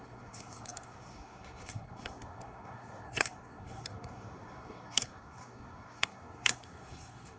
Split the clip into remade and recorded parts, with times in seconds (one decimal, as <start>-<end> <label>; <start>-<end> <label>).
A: 0.0-7.4 remade